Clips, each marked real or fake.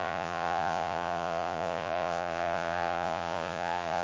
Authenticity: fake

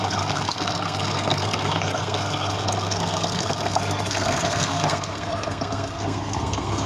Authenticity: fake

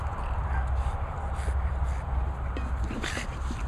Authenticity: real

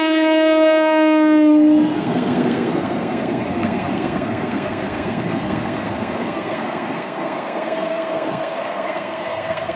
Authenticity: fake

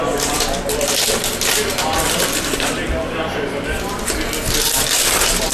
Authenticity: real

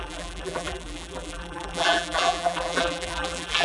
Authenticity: fake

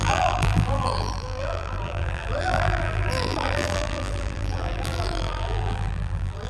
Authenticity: fake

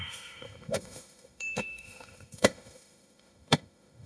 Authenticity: fake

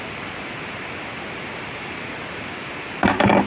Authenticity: fake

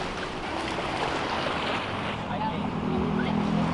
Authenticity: real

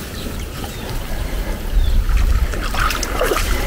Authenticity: real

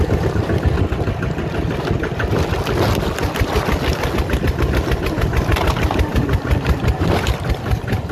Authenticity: real